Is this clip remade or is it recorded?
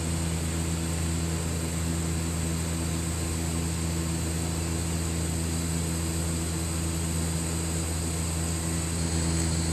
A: recorded